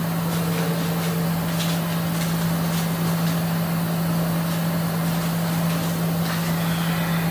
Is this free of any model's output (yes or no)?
yes